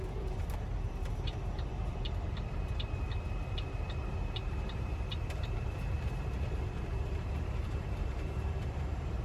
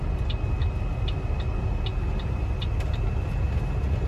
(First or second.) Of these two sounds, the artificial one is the first